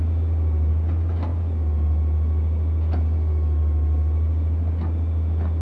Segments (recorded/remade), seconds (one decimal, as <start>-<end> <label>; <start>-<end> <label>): 0.0-5.6 recorded